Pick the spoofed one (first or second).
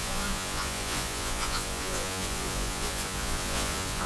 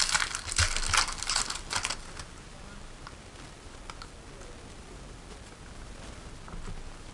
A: first